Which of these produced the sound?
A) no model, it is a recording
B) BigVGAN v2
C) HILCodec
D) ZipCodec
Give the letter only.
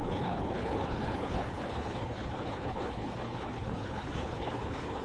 C